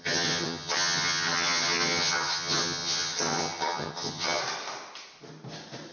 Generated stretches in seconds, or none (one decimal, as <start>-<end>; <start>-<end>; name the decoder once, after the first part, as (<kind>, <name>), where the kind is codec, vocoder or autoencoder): 0.0-4.4 (vocoder, HiFi-GAN)